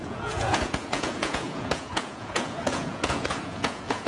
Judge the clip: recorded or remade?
remade